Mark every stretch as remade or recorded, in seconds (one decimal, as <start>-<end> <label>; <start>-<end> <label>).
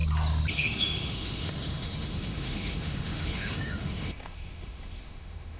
0.0-0.5 recorded; 0.5-5.6 remade